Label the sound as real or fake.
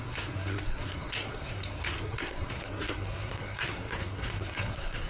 fake